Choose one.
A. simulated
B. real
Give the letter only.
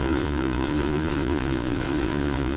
A